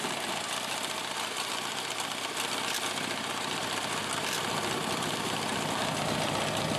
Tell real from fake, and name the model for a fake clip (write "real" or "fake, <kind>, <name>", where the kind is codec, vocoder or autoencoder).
real